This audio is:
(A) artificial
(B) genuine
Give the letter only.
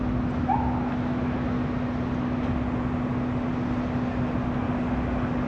B